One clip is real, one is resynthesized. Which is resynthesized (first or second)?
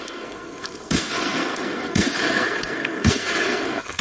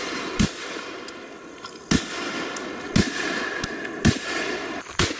first